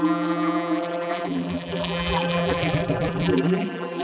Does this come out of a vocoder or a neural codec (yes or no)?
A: yes